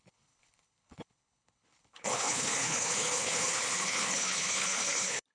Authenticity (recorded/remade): remade